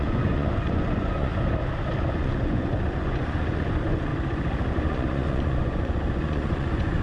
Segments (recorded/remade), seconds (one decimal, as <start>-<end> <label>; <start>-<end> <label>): 0.0-1.3 remade; 1.3-2.1 recorded; 2.1-4.1 remade; 4.1-4.7 recorded; 4.7-7.0 remade